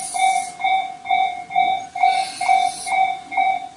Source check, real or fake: real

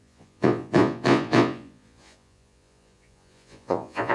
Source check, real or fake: fake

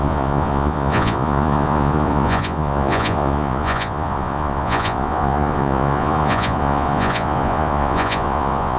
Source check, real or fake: fake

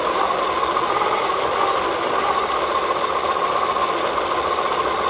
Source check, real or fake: real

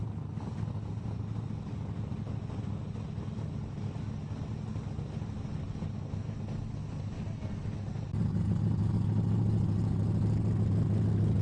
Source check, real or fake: real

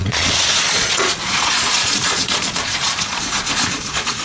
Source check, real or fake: fake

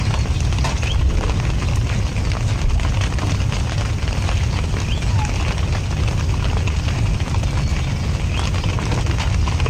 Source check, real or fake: real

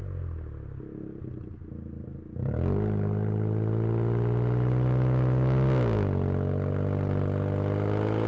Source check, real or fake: real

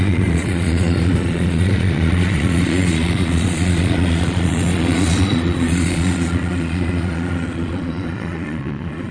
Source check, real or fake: fake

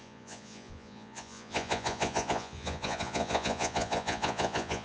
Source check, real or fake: fake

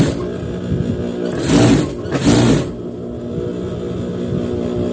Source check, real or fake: real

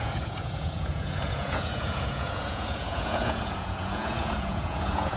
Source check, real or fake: fake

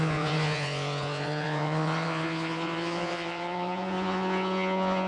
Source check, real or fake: fake